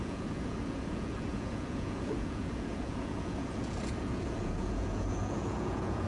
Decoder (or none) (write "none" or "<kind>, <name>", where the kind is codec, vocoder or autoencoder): vocoder, Vocos